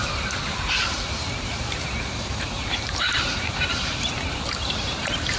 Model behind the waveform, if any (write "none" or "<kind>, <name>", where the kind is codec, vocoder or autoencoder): vocoder, BigVGAN v2